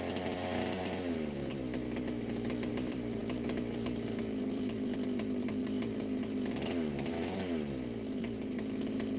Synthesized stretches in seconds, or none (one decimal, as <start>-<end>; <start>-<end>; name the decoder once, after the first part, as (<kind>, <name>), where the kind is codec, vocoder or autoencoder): 0.0-1.5 (vocoder, BigVGAN v2); 2.7-5.6; 7.1-9.2